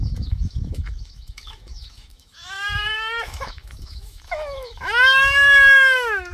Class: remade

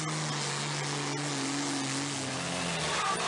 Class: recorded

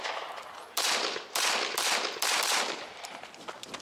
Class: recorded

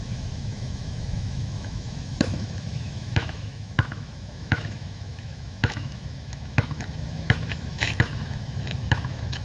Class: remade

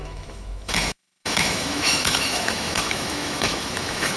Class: remade